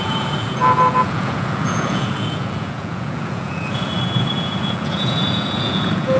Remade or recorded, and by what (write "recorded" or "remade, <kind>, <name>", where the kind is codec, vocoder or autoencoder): remade, vocoder, Vocos